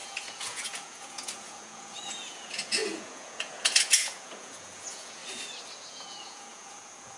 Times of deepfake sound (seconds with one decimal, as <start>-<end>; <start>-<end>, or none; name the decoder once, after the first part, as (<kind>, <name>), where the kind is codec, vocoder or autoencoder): 0.0-5.2 (vocoder, Vocos); 5.9-7.2